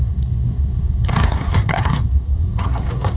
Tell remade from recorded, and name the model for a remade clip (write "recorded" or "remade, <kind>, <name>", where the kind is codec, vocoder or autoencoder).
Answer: remade, codec, SNAC